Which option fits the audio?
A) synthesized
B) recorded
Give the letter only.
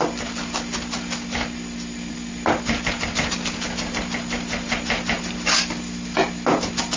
B